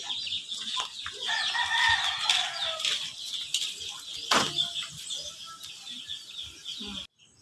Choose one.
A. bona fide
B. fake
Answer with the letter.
A